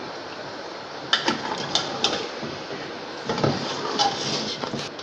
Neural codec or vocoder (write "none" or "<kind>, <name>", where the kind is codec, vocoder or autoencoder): none